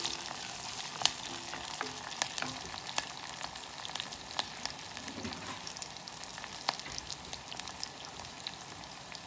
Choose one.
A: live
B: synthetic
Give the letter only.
A